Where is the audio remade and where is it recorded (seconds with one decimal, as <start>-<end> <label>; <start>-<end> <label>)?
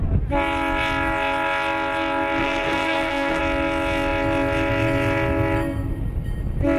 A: 0.0-2.4 recorded; 2.4-3.4 remade; 3.4-6.8 recorded